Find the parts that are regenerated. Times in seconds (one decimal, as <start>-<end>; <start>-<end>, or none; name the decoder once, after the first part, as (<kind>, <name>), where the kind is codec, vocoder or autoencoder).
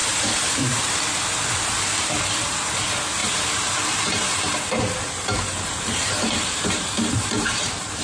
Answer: 0.0-1.0 (vocoder, BigVGAN v2); 3.2-8.0